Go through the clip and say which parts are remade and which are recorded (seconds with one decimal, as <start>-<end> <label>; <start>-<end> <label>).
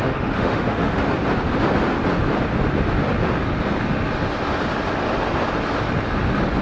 0.0-1.0 remade; 1.0-6.6 recorded